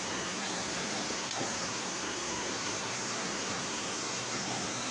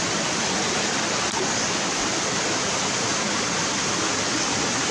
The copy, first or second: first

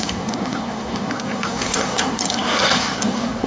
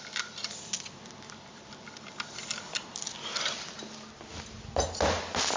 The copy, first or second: first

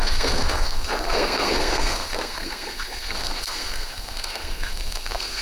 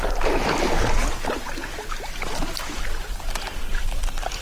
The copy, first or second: first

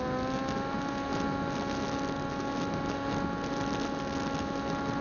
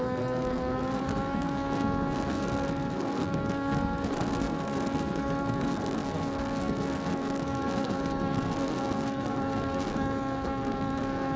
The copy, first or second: second